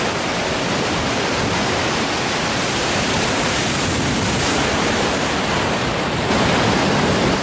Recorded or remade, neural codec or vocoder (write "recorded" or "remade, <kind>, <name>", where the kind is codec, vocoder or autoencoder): recorded